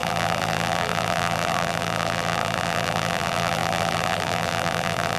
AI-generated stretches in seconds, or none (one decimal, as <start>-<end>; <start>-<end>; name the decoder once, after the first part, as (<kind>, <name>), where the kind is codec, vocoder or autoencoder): 0.0-5.2 (vocoder, BigVGAN v2)